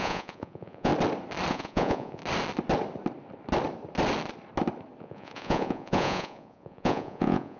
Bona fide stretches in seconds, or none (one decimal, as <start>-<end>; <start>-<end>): 0.9-1.5; 2.2-5.0